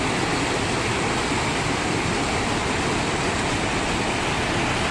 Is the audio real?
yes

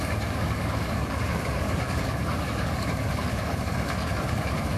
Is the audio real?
no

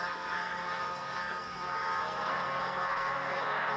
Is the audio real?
no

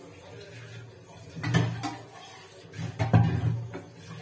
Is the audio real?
yes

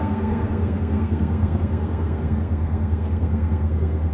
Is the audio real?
no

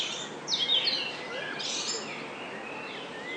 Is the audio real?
yes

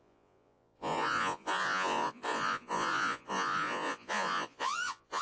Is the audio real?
no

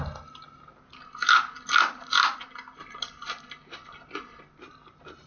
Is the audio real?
yes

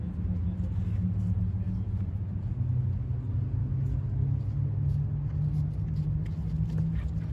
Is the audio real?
yes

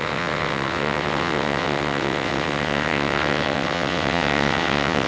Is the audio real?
no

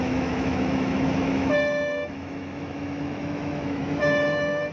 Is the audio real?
no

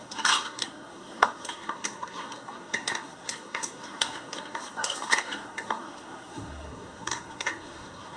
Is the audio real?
no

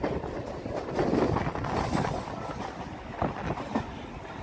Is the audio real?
yes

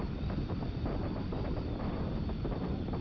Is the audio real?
yes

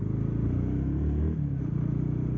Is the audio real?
yes